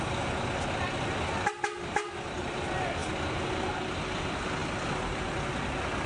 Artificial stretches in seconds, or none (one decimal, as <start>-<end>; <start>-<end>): none